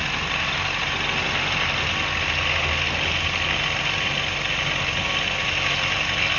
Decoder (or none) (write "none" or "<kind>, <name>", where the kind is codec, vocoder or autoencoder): none